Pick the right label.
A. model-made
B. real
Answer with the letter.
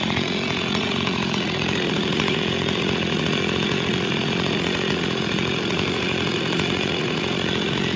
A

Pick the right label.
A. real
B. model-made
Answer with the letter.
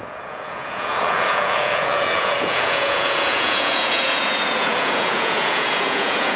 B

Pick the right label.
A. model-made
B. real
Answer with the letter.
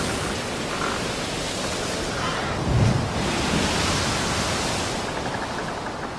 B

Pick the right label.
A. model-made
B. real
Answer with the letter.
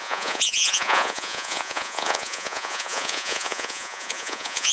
A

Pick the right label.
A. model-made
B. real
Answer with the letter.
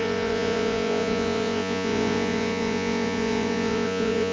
A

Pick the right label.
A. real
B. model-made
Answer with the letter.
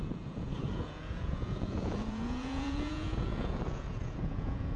B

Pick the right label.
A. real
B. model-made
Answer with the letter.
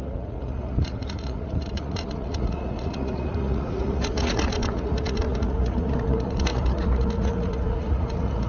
B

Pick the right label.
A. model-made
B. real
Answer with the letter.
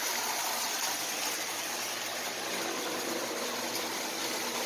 B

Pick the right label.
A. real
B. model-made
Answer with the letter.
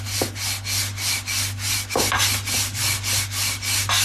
A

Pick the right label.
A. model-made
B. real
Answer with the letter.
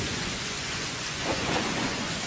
A